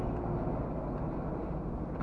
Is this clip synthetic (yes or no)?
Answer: no